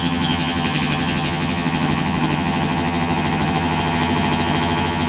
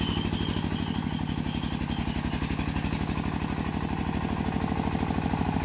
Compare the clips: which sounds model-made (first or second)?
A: first